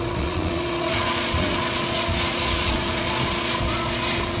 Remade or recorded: remade